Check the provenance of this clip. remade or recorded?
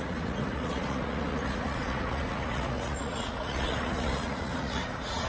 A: remade